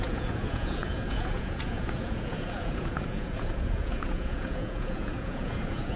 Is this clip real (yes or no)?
no